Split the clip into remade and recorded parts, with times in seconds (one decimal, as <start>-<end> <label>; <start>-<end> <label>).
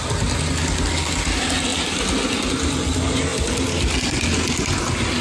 0.0-5.2 recorded